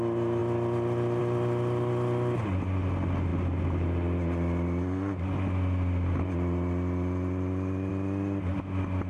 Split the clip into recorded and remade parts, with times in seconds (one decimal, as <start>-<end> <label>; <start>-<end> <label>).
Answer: 0.0-9.1 recorded